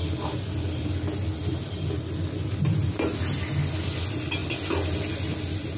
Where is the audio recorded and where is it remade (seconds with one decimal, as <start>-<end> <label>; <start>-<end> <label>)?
0.0-5.8 recorded